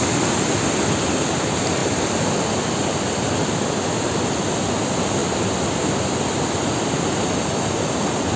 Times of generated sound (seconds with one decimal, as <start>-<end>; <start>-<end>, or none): none